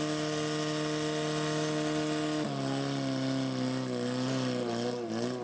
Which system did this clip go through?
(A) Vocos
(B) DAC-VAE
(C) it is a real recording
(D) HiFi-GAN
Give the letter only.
C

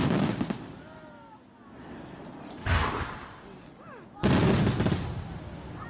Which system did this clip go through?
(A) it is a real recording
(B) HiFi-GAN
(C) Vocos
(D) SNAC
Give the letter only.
A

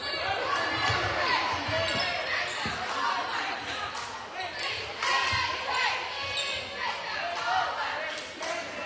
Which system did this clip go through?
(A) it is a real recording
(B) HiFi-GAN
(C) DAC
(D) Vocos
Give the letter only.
A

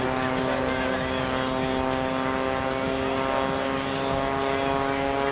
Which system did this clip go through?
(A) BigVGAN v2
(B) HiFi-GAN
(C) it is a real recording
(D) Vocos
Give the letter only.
C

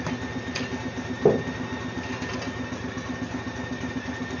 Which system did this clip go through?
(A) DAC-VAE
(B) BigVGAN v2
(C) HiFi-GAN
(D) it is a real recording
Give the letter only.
D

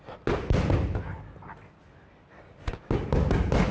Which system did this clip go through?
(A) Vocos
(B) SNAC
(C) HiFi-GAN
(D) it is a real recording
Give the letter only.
D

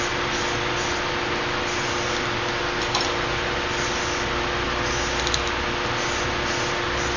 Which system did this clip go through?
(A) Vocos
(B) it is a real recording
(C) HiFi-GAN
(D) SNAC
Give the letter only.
B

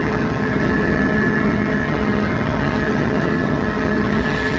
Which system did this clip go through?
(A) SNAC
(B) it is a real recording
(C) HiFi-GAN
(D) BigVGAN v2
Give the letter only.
C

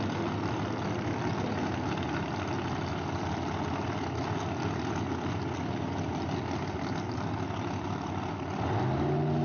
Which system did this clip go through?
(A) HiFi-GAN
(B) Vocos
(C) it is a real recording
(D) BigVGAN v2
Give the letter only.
C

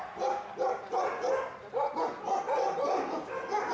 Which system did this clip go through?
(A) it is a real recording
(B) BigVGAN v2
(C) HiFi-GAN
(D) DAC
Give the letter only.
A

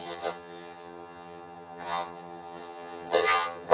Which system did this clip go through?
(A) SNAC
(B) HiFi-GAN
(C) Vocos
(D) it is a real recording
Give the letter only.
B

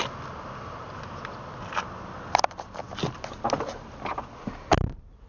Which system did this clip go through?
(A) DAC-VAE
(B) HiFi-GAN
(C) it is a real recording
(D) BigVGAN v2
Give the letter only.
C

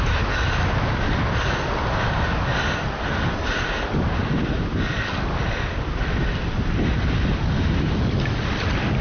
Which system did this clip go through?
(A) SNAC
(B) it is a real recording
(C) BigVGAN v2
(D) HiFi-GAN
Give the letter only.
B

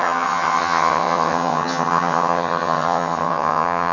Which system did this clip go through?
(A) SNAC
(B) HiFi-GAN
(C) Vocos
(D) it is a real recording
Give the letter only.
B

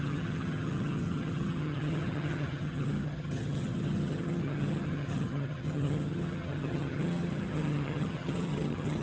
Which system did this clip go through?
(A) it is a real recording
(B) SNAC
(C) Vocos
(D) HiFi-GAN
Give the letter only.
D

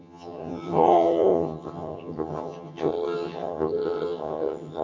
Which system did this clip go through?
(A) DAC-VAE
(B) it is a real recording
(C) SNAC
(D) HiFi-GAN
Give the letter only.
D